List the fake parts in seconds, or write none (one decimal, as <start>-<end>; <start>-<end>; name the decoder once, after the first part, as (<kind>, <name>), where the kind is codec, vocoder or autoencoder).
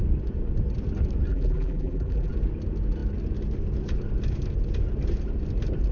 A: 1.3-2.3 (vocoder, BigVGAN v2)